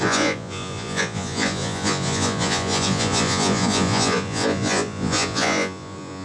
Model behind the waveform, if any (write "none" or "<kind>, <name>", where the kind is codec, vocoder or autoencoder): vocoder, Vocos